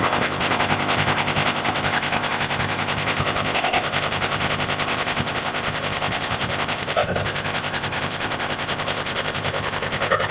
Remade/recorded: remade